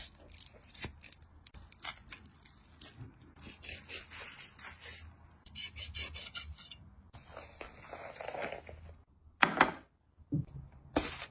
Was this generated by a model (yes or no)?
no